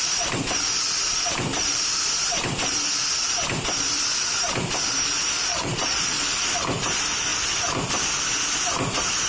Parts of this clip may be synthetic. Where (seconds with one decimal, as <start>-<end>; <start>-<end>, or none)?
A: 5.5-6.2